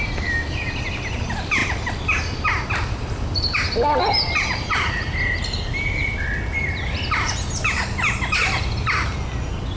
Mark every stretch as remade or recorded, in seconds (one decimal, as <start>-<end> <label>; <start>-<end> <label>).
0.0-9.8 recorded